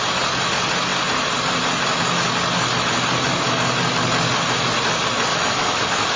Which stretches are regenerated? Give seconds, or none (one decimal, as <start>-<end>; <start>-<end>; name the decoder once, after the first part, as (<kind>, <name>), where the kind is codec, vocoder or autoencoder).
5.3-5.8 (autoencoder, DAC-VAE)